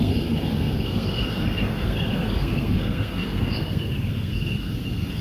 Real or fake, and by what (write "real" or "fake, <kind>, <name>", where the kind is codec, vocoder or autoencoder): fake, codec, SNAC